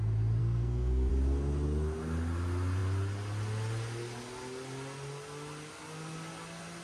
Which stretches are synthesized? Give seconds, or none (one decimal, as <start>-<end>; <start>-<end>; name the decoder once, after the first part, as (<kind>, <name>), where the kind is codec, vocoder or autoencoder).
0.4-1.1 (codec, SNAC)